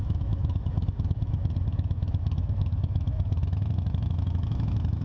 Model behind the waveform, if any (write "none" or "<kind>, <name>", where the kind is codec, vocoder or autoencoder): autoencoder, DAC-VAE